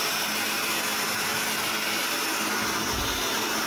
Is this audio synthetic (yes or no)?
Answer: no